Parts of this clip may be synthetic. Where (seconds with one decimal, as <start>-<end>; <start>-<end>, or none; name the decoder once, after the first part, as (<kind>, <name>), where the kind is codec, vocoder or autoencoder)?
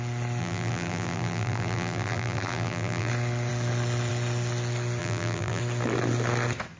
0.4-3.1 (vocoder, BigVGAN v2); 5.0-5.6